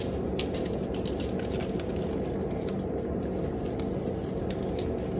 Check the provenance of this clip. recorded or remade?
recorded